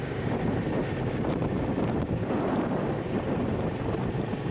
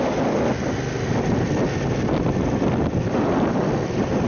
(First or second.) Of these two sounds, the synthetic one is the first